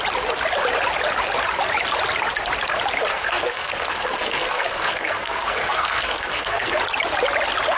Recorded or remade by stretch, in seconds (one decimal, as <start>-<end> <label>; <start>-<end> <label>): 0.0-3.1 recorded; 3.1-6.8 remade; 6.8-7.8 recorded

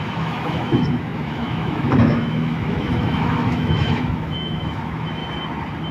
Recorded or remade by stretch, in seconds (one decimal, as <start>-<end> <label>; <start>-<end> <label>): 0.0-5.2 remade; 5.2-5.9 recorded

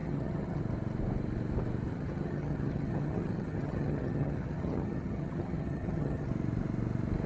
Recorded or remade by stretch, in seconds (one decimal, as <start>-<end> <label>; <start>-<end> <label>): 0.0-0.6 remade; 0.6-1.9 recorded; 1.9-6.3 remade; 6.3-7.3 recorded

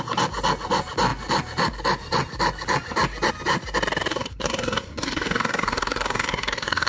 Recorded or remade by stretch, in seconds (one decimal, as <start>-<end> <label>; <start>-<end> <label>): 0.0-4.1 recorded; 4.1-6.9 remade

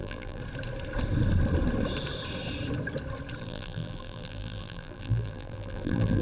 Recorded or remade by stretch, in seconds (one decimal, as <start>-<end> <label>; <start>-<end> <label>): 0.0-0.4 remade; 0.4-3.4 recorded; 3.4-6.2 remade

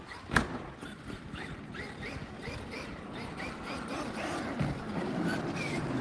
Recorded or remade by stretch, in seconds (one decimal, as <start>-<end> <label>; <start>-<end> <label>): 0.0-6.0 recorded

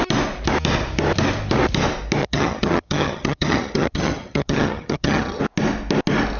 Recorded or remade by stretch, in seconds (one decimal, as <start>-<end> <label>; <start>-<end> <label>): 0.0-2.2 recorded; 2.2-5.4 remade; 5.4-6.4 recorded

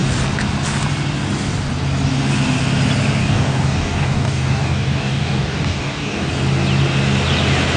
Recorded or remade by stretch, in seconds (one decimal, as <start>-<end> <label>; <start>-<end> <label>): 0.0-3.2 recorded; 3.2-6.3 remade; 6.3-7.8 recorded